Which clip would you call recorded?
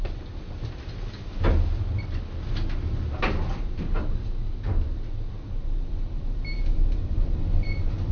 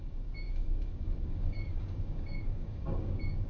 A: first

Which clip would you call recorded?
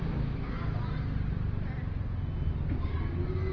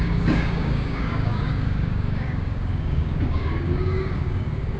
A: first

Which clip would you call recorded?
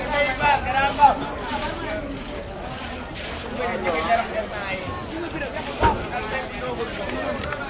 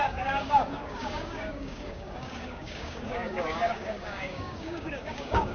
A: first